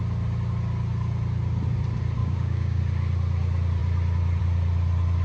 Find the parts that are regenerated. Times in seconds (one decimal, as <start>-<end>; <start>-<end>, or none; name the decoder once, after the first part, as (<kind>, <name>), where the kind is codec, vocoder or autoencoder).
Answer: 2.2-2.8 (codec, DAC)